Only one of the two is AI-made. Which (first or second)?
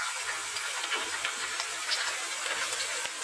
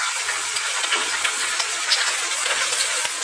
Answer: second